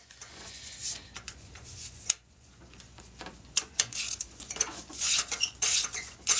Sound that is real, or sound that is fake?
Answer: fake